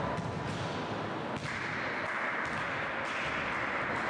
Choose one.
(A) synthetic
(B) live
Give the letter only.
B